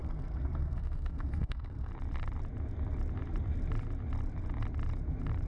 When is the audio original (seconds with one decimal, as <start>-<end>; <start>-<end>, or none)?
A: 1.9-5.5